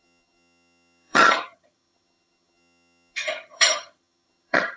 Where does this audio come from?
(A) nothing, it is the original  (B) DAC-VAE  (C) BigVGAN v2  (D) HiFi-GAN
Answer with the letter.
D